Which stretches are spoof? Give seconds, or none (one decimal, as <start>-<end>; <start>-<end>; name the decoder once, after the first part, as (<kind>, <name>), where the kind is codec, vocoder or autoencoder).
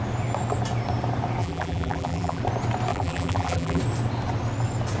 1.4-2.4 (vocoder, BigVGAN v2); 2.9-3.8